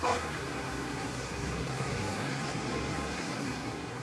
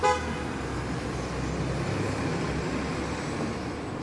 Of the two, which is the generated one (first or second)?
first